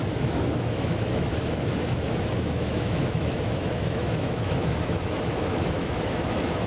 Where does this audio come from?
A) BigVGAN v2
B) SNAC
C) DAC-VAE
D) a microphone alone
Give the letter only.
C